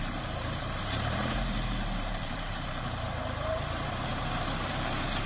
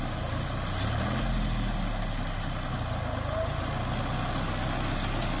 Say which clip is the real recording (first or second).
second